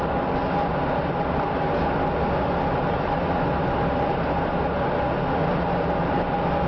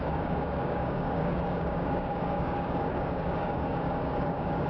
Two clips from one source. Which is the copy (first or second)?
second